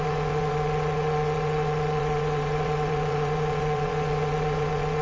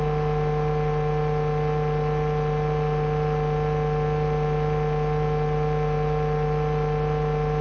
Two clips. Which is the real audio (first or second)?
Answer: second